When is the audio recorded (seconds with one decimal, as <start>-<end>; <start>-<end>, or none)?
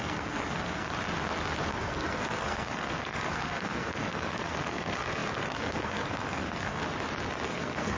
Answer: 0.9-1.7; 6.8-7.5